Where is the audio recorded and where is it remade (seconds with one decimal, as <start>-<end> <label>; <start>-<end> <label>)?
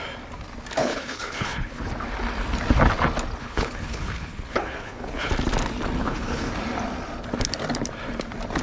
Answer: 0.0-0.8 recorded; 0.8-1.9 remade; 1.9-3.4 recorded; 3.4-5.3 remade; 5.3-6.0 recorded; 6.0-6.5 remade; 6.5-8.6 recorded